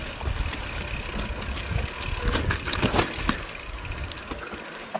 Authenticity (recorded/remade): recorded